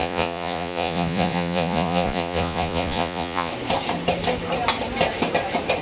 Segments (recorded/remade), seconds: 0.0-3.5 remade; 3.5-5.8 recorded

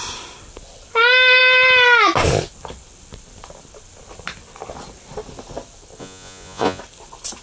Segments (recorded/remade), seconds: 0.0-6.0 recorded; 6.0-6.8 remade; 6.8-7.4 recorded

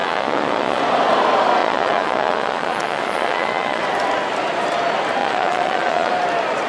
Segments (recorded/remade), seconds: 0.0-0.8 remade; 0.8-1.6 recorded; 1.6-3.8 remade; 3.8-5.2 recorded; 5.2-6.1 remade; 6.1-6.7 recorded

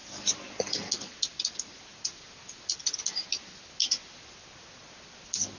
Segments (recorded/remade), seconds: 0.0-5.6 recorded

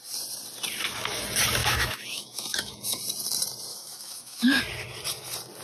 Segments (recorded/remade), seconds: 0.0-1.6 recorded; 1.6-3.0 remade; 3.0-3.7 recorded; 3.7-4.6 remade; 4.6-5.6 recorded

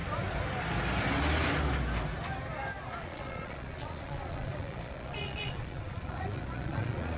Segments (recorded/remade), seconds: 0.0-3.0 recorded; 3.0-7.2 remade

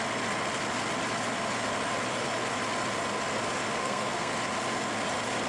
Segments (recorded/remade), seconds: 0.0-3.8 recorded; 3.8-4.3 remade; 4.3-5.5 recorded

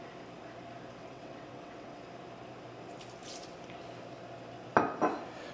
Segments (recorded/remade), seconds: 0.0-1.0 recorded; 1.0-2.0 remade; 2.0-5.5 recorded